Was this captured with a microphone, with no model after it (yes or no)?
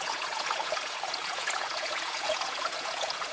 no